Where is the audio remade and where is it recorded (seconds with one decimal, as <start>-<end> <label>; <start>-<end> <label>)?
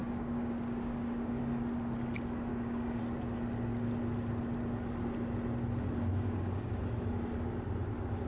0.0-1.4 remade; 1.4-2.5 recorded; 2.5-3.0 remade; 3.0-6.1 recorded; 6.1-6.8 remade; 6.8-8.3 recorded